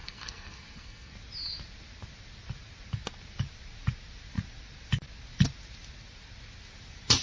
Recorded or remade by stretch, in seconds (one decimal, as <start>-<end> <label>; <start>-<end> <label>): 0.0-1.1 remade; 1.1-7.2 recorded